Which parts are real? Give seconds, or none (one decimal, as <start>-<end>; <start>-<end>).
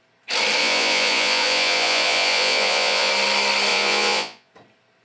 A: 0.0-0.6; 3.1-3.7; 4.5-5.0